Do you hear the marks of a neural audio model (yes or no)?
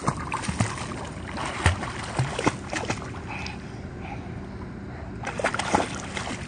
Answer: no